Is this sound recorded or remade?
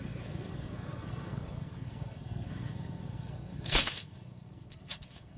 remade